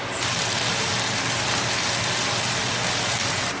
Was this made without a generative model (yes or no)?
yes